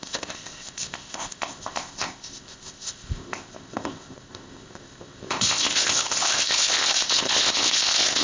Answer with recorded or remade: remade